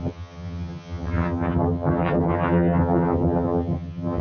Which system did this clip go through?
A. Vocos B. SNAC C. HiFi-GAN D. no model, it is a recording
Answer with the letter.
C